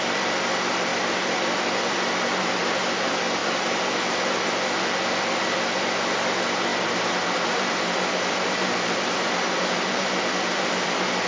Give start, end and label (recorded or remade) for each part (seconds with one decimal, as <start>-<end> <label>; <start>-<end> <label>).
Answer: 0.0-0.9 remade; 0.9-1.5 recorded; 1.5-11.3 remade